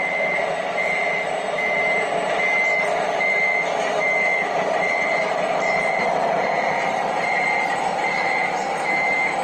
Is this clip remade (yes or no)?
yes